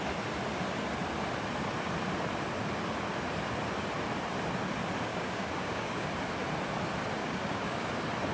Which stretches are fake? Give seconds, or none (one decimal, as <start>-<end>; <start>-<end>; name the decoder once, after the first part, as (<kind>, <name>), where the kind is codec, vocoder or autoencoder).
5.1-6.1 (codec, DAC); 7.2-7.9